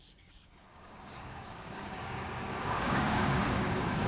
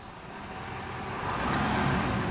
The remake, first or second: first